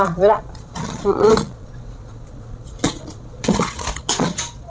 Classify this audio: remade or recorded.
remade